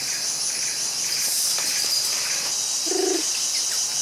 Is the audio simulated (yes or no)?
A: no